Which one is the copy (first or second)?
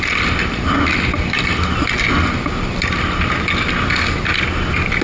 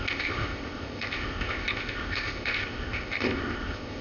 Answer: second